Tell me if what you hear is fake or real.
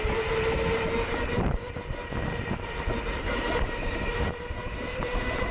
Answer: real